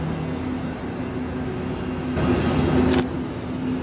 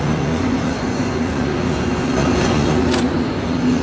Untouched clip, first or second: first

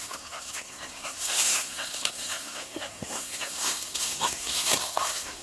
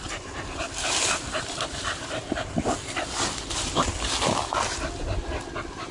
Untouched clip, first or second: second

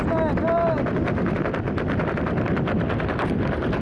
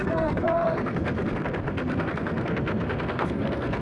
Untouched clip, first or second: first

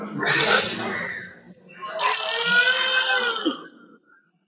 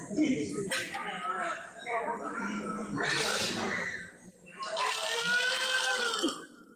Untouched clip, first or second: first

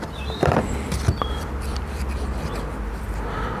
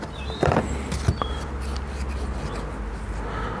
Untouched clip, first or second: second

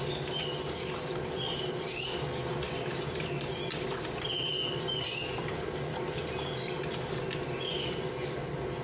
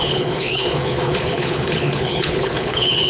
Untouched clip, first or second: first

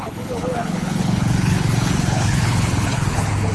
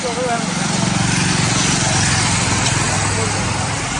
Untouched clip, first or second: second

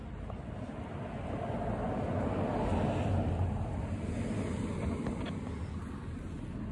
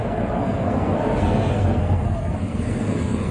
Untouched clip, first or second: first